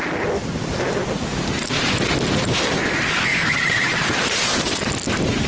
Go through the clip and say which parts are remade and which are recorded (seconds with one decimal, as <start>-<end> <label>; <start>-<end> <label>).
0.0-1.3 recorded; 1.3-2.0 remade; 2.0-3.3 recorded; 3.3-4.7 remade; 4.7-5.5 recorded